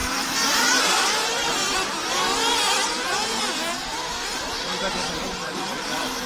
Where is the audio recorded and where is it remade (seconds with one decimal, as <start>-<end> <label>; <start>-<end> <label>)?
0.0-0.5 recorded; 0.5-1.5 remade; 1.5-4.9 recorded; 4.9-6.3 remade